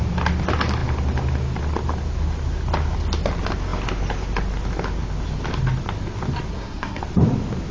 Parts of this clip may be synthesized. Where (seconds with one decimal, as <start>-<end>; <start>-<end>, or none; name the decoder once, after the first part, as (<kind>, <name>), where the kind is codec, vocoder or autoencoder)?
6.5-7.0 (codec, SNAC)

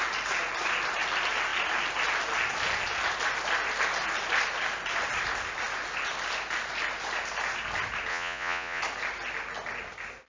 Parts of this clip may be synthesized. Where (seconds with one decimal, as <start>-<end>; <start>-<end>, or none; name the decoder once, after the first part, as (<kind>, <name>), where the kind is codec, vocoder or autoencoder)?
8.1-8.8 (vocoder, Vocos)

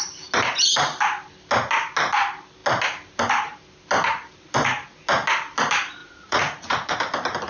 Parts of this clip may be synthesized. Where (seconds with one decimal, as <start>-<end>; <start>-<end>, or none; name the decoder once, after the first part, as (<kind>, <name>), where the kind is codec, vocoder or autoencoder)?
6.0-7.0 (vocoder, Vocos)

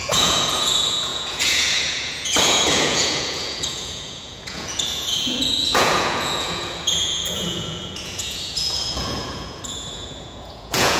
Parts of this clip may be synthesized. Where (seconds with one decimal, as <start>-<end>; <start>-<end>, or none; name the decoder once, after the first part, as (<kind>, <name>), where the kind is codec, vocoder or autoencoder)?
0.0-11.0 (vocoder, Vocos)